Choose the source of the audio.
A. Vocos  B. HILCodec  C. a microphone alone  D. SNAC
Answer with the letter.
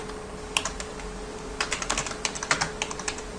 C